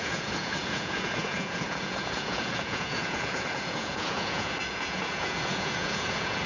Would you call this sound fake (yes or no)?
yes